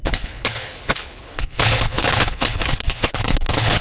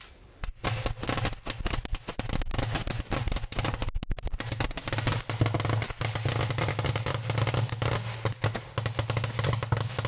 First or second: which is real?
second